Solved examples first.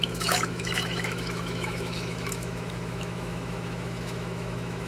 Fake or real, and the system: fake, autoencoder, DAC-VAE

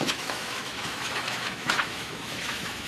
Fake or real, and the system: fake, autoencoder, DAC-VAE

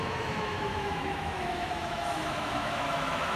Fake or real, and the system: fake, autoencoder, DAC-VAE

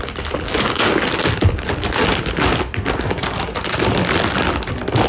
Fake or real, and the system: real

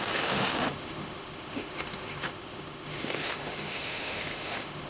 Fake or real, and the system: fake, autoencoder, DAC-VAE